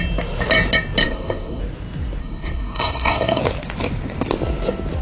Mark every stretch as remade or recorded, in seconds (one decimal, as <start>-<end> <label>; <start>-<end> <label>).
0.0-1.0 recorded; 1.0-1.6 remade; 1.6-2.2 recorded; 2.2-3.4 remade; 3.4-5.0 recorded